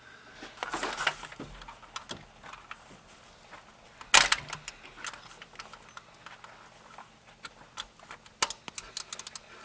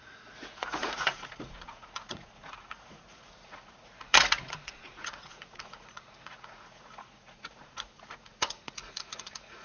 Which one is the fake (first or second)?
second